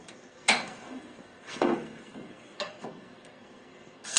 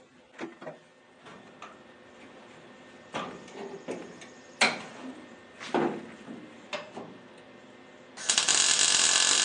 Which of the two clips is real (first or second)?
second